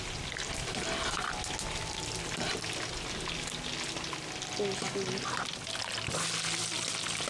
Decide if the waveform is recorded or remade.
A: recorded